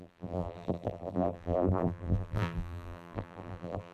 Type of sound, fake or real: fake